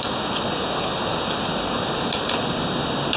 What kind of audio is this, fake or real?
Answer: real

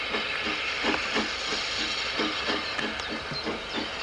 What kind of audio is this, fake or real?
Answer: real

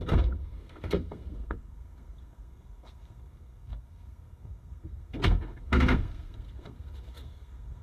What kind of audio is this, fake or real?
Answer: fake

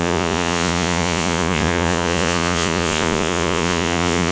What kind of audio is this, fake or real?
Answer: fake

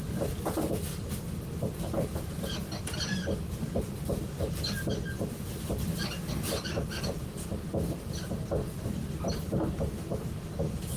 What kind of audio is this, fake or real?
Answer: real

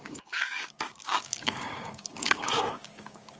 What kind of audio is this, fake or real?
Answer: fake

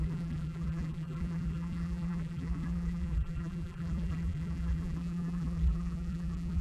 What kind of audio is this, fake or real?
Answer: fake